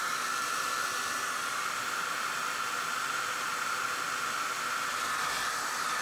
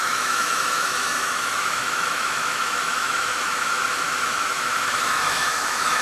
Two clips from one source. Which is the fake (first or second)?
second